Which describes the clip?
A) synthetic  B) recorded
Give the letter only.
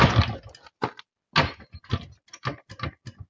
B